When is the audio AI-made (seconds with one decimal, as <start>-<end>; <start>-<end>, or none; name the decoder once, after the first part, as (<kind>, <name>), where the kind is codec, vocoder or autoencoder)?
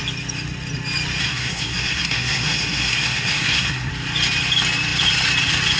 1.2-3.9 (codec, SNAC)